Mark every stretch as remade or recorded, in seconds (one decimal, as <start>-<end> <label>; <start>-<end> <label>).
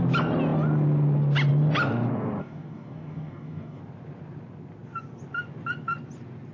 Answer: 0.0-2.4 recorded; 2.4-3.8 remade; 3.8-6.5 recorded